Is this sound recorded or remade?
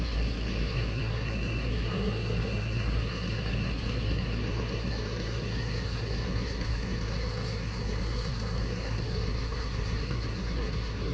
remade